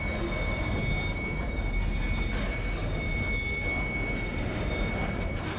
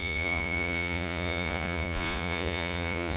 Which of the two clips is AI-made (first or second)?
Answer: second